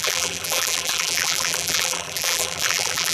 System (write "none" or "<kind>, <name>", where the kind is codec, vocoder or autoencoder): vocoder, BigVGAN v2